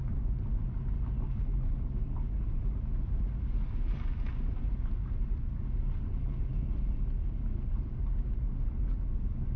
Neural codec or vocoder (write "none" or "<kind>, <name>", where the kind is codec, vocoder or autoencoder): none